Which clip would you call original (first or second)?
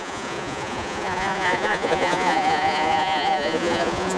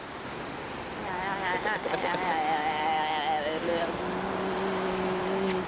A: second